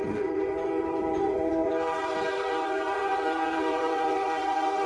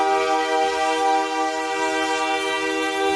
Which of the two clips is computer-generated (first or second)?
first